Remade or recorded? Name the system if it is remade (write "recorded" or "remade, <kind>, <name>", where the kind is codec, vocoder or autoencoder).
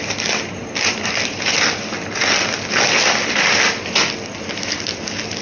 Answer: recorded